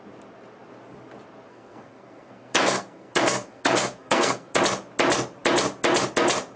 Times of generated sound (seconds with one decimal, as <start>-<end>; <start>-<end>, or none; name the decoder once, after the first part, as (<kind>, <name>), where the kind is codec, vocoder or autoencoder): 1.5-4.6 (codec, SNAC)